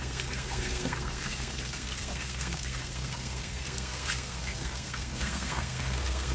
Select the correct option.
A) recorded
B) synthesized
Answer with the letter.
B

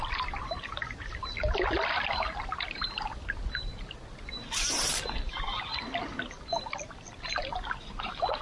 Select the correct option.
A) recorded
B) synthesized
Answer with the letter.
A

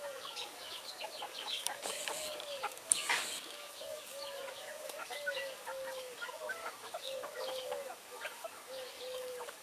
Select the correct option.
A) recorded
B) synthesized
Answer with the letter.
B